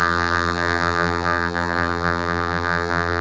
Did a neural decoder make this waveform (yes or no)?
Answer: yes